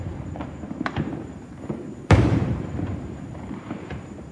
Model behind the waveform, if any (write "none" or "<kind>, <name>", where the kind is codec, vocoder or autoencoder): vocoder, BigVGAN v2